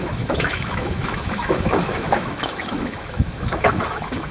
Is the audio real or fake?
fake